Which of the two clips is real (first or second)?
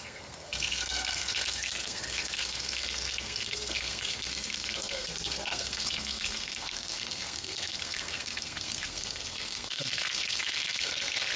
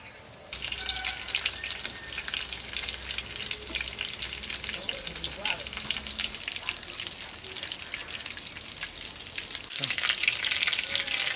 second